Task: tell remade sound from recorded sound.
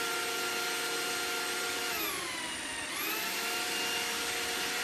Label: recorded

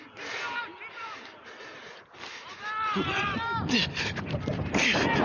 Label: recorded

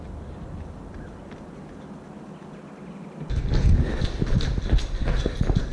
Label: recorded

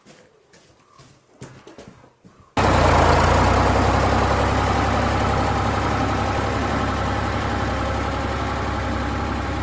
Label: recorded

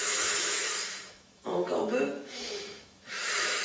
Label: remade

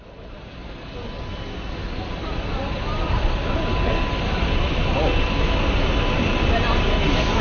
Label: recorded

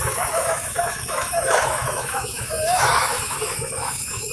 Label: remade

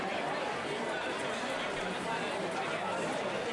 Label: recorded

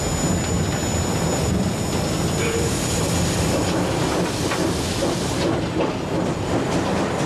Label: recorded